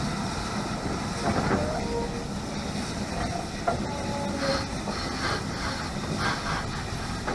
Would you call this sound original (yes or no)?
yes